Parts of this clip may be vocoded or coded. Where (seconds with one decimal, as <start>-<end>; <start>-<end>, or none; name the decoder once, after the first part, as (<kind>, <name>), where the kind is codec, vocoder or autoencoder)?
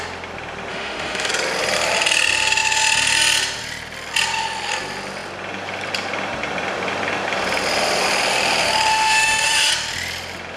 0.7-1.3 (autoencoder, DAC-VAE); 8.9-9.7